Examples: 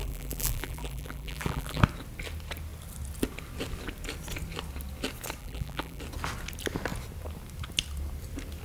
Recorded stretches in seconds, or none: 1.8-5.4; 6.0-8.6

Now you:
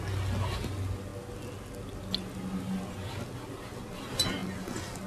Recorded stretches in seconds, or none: 0.0-5.1